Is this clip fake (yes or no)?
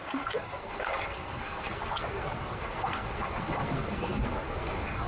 yes